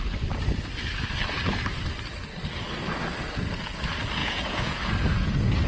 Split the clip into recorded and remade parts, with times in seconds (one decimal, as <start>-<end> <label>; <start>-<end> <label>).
0.0-4.2 recorded; 4.2-4.9 remade; 4.9-5.7 recorded